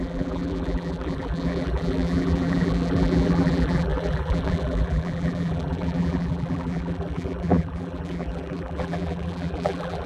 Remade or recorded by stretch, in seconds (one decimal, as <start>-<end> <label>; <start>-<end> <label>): 0.0-10.1 remade